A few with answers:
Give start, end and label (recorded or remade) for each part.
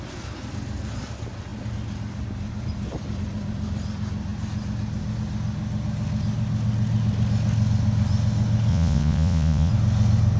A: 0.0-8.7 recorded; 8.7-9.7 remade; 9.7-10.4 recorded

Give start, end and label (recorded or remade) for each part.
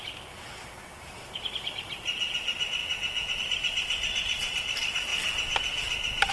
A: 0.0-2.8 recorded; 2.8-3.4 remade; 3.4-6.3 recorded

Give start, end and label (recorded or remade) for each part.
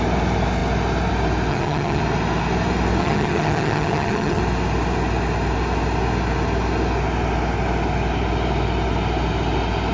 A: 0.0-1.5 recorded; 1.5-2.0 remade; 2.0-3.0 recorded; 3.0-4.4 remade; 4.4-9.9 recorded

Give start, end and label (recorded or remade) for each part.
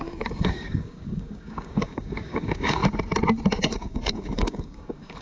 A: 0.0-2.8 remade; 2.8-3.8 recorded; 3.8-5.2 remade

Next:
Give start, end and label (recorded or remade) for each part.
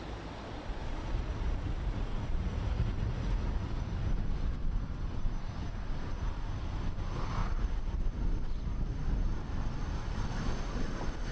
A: 0.0-0.8 recorded; 0.8-3.8 remade; 3.8-7.4 recorded; 7.4-8.0 remade; 8.0-11.3 recorded